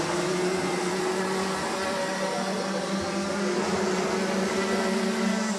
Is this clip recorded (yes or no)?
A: yes